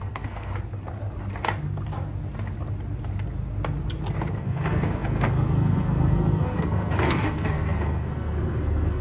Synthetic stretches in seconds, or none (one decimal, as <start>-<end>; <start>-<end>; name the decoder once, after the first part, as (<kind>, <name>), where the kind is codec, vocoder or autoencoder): 0.0-0.5 (codec, SNAC); 4.3-9.0